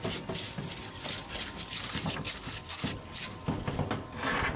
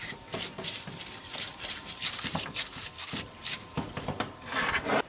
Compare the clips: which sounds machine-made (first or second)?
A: second